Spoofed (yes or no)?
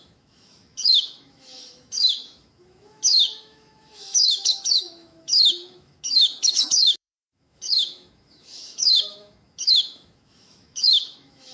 yes